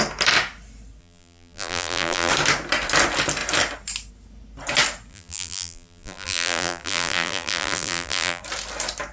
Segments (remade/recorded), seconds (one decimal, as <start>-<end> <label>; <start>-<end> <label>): 0.0-1.0 recorded; 1.0-2.3 remade; 2.3-5.1 recorded; 5.1-8.4 remade; 8.4-9.1 recorded